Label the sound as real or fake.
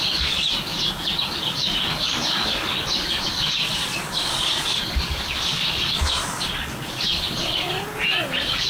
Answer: fake